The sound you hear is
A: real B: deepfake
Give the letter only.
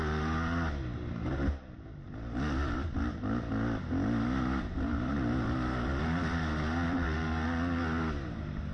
A